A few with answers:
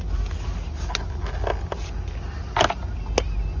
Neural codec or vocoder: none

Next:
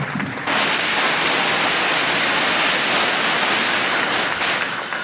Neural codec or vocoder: none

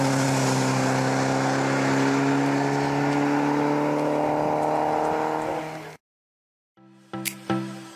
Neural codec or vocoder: none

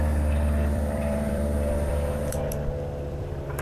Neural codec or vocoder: vocoder, BigVGAN v2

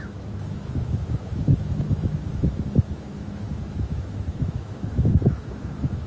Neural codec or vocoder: autoencoder, DAC-VAE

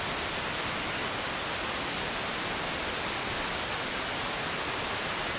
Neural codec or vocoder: none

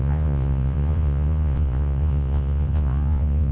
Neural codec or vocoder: vocoder, Vocos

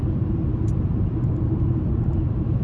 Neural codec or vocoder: none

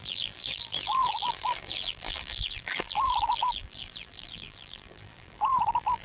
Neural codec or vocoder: vocoder, BigVGAN v2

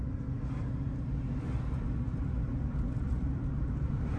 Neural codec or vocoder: none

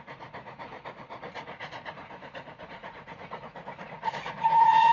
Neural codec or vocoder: vocoder, Vocos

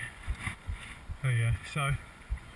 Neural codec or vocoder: vocoder, Vocos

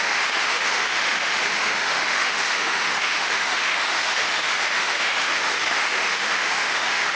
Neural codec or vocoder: autoencoder, DAC-VAE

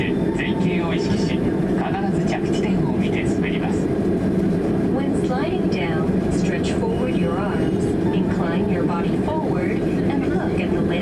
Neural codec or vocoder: vocoder, BigVGAN v2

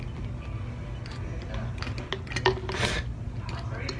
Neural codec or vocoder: none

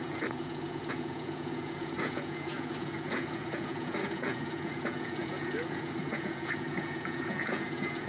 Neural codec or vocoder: vocoder, Vocos